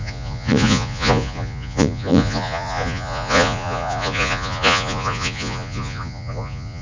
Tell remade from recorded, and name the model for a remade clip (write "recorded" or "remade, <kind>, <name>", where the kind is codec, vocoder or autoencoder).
remade, vocoder, Vocos